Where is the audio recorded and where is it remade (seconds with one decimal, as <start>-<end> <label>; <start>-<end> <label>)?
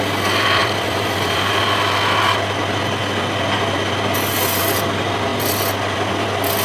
0.0-0.6 recorded; 0.6-1.6 remade; 1.6-6.6 recorded